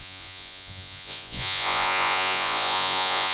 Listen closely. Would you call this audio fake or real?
fake